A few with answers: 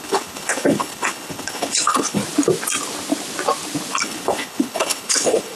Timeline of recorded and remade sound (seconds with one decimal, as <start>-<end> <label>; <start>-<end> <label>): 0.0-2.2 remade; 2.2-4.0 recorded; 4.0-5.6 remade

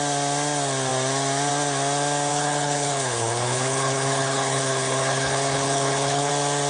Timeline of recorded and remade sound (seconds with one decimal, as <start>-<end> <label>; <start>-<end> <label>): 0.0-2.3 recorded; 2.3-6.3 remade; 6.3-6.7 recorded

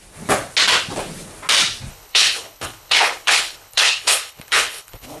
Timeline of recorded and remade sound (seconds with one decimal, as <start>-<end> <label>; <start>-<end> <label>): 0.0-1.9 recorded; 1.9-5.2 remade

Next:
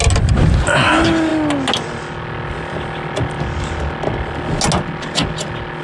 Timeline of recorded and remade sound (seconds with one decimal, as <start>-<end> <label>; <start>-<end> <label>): 0.0-5.8 recorded

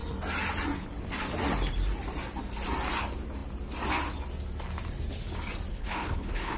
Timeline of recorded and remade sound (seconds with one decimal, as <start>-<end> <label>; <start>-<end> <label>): 0.0-5.7 recorded; 5.7-6.6 remade

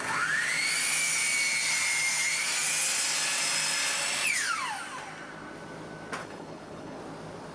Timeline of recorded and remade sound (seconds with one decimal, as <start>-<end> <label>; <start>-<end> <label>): 0.0-6.2 recorded; 6.2-7.0 remade; 7.0-7.5 recorded